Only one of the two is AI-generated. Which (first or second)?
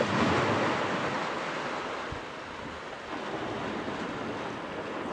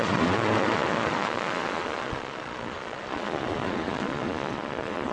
second